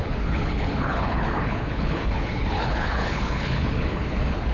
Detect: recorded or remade remade